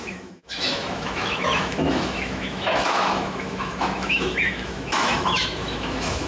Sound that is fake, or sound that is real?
fake